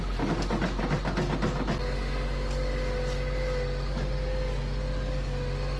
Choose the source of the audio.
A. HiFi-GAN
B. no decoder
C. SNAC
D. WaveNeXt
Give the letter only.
B